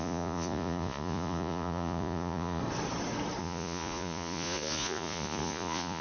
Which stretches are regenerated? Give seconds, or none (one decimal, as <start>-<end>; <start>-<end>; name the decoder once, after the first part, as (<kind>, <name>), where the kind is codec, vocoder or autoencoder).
0.0-2.6 (vocoder, Vocos); 3.4-6.0